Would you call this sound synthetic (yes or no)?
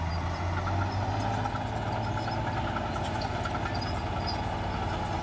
no